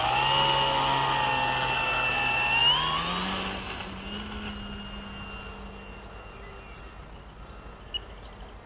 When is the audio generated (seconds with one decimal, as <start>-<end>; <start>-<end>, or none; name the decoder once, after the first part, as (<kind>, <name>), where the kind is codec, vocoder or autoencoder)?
none